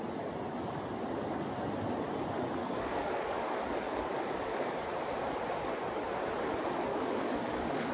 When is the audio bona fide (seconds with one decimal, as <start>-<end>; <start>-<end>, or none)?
0.0-2.6; 4.7-6.9